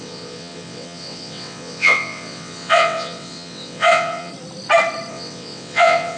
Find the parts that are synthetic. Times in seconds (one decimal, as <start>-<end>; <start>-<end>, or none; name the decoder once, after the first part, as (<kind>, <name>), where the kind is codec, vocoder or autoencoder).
0.0-4.3 (vocoder, WaveNeXt); 5.1-6.2